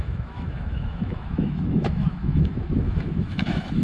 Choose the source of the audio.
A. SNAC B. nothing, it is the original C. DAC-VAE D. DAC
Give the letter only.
C